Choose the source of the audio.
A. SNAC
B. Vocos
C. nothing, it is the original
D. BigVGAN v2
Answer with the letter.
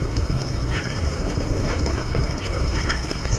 A